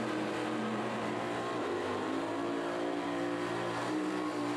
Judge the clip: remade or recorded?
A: remade